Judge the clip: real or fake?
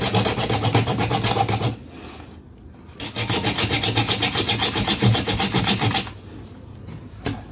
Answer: real